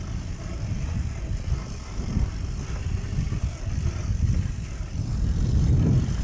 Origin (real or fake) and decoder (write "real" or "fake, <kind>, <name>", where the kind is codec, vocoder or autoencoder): real